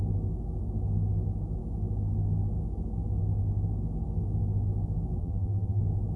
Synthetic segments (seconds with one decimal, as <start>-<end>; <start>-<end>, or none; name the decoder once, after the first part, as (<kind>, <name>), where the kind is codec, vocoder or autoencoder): 5.2-5.8 (vocoder, BigVGAN v2)